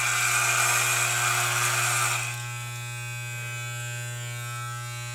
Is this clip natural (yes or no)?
yes